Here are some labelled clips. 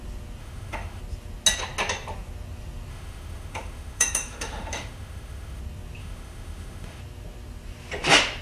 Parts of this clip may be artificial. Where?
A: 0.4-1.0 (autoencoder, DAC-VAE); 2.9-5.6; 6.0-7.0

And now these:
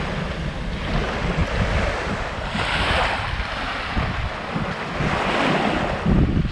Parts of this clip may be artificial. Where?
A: none